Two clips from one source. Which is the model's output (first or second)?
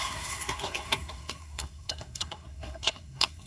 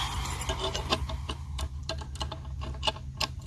first